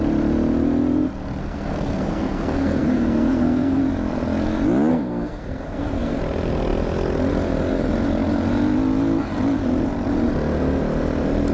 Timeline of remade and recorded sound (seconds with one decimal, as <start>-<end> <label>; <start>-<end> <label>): 0.0-1.4 recorded; 1.4-3.8 remade; 3.8-4.9 recorded; 4.9-6.2 remade; 6.2-11.5 recorded